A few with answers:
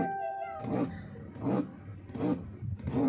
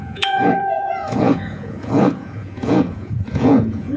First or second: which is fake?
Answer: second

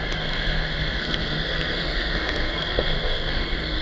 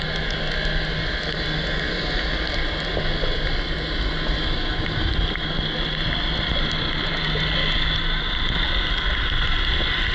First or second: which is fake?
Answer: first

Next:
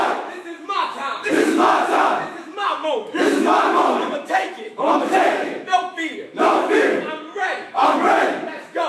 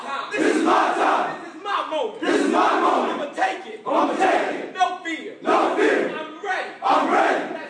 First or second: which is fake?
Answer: first